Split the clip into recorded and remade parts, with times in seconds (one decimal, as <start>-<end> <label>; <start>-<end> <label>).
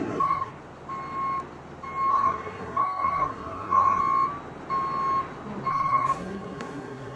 0.0-0.5 remade; 0.5-2.1 recorded; 2.1-4.0 remade; 4.0-5.7 recorded; 5.7-7.2 remade